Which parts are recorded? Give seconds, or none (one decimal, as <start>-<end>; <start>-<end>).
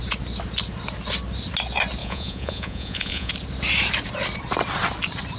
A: 0.0-2.0; 3.3-5.4